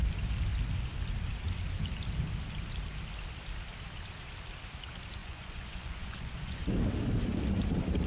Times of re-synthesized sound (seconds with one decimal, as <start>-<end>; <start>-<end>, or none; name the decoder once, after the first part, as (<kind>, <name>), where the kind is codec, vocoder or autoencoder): 5.2-6.6 (vocoder, Vocos)